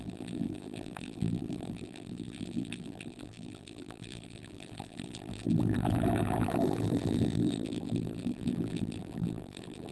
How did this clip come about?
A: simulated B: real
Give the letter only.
A